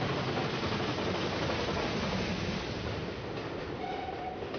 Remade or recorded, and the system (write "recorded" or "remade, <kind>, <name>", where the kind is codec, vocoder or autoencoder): recorded